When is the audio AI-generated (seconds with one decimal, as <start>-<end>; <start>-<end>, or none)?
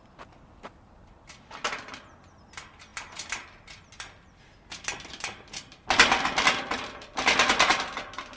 none